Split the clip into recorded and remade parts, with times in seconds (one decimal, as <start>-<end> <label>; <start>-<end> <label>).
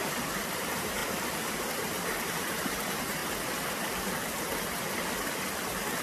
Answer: 0.0-3.2 remade; 3.2-6.0 recorded